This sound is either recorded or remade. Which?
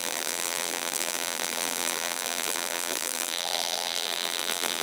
remade